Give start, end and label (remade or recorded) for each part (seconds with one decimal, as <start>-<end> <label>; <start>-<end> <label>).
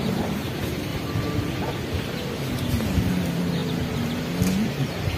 0.0-0.9 remade; 0.9-2.3 recorded; 2.3-3.6 remade; 3.6-4.6 recorded; 4.6-5.2 remade